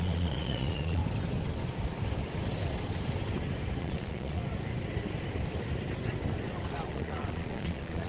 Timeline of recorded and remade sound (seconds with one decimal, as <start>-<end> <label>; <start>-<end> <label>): 0.0-1.0 remade; 1.0-3.8 recorded; 3.8-4.4 remade; 4.4-6.9 recorded; 6.9-8.1 remade